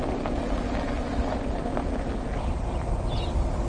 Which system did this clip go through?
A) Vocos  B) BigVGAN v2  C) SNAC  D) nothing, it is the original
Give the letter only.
D